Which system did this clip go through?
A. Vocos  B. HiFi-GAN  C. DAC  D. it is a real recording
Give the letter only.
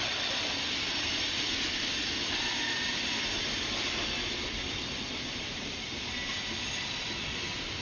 D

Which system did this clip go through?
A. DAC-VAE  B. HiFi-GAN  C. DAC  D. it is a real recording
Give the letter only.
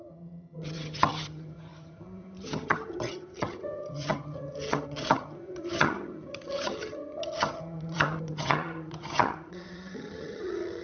B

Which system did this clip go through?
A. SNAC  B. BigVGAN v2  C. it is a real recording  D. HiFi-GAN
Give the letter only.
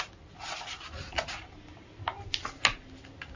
C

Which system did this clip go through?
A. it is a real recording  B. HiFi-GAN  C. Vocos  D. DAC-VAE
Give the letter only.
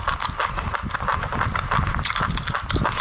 A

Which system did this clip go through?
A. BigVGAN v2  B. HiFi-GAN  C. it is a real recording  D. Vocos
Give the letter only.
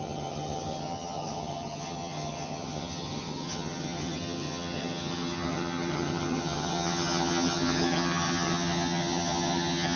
B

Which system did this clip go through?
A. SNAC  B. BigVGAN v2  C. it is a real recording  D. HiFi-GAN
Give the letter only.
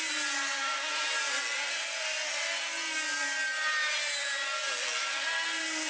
C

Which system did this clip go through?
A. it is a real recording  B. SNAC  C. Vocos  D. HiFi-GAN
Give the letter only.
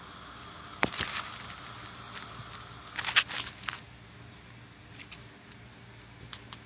A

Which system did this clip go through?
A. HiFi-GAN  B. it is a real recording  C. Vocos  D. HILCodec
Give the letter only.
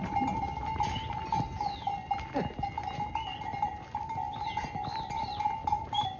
B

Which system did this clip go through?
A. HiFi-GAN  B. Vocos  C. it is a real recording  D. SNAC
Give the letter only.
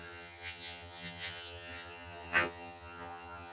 A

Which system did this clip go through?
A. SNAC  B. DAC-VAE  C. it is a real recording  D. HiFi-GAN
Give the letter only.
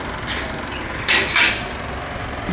C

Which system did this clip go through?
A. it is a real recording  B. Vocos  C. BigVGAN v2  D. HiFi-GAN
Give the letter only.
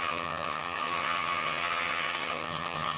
D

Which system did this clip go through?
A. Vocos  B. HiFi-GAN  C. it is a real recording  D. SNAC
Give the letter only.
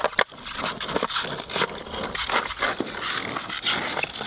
C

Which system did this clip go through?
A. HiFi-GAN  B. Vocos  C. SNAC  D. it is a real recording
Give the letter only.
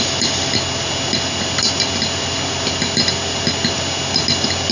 D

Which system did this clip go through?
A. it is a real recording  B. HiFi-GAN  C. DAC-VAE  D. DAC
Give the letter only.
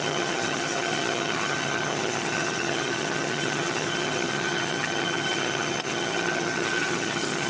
B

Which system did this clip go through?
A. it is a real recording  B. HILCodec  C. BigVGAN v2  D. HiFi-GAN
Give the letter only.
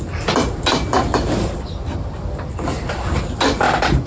A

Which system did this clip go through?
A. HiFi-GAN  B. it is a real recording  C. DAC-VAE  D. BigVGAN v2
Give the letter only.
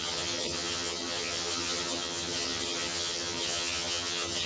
A